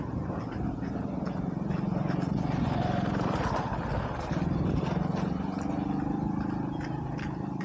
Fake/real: real